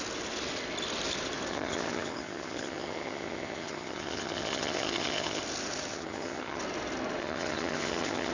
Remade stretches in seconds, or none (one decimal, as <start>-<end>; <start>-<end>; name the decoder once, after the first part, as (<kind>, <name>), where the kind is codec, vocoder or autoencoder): 1.5-5.4 (vocoder, HiFi-GAN); 5.9-6.6; 7.2-8.3

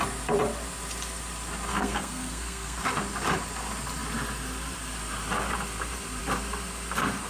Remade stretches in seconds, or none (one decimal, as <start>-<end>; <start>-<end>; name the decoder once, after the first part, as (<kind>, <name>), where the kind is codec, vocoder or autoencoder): 1.7-2.8 (codec, SNAC)

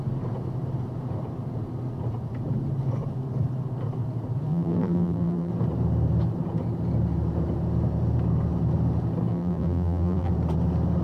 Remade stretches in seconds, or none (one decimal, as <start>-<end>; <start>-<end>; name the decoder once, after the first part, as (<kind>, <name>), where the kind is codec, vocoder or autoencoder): 4.5-5.5 (vocoder, BigVGAN v2); 9.3-10.3